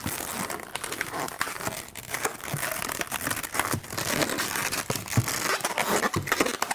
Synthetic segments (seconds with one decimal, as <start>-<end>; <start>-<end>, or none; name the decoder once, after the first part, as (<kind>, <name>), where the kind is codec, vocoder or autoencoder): none